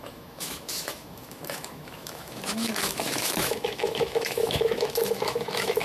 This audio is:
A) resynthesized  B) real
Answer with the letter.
A